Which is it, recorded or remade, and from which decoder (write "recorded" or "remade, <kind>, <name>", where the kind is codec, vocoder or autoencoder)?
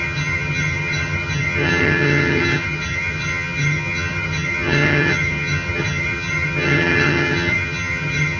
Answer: remade, vocoder, HiFi-GAN